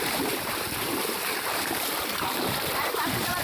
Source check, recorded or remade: remade